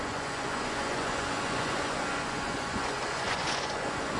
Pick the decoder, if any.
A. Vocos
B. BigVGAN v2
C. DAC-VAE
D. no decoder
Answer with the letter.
A